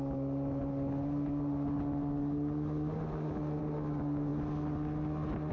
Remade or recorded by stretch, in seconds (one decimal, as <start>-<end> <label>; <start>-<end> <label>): 0.0-5.5 recorded